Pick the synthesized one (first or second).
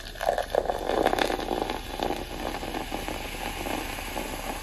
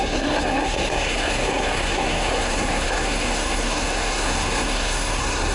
second